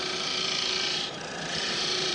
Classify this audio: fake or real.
fake